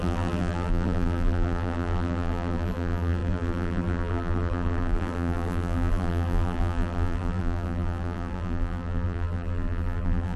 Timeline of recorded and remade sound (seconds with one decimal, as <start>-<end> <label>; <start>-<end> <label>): 0.0-10.4 remade